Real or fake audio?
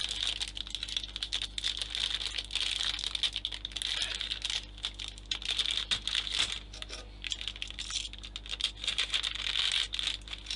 real